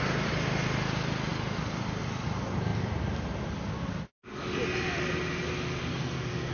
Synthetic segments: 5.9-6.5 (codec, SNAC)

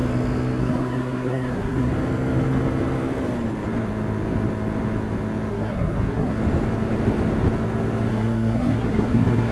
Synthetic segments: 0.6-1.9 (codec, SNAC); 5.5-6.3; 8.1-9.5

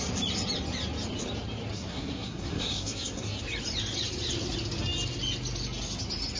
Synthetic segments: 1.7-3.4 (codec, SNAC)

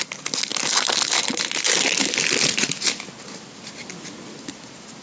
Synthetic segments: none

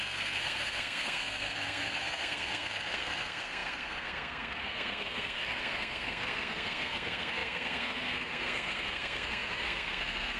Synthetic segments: 0.0-10.4 (codec, SNAC)

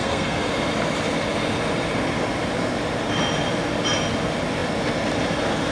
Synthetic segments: 0.0-0.5 (codec, SNAC)

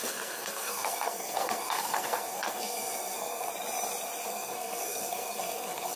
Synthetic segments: 0.0-3.5 (codec, SNAC); 4.3-6.0

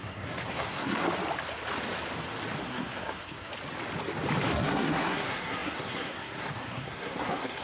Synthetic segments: 0.0-1.0 (codec, SNAC); 2.6-3.5; 4.5-7.6